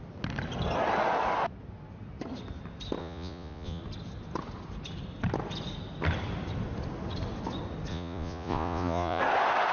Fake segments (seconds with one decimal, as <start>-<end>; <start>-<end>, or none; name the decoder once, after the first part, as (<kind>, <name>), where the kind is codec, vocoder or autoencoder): 3.0-3.8 (vocoder, Vocos); 7.9-9.2